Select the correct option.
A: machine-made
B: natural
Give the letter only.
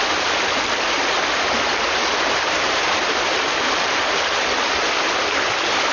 B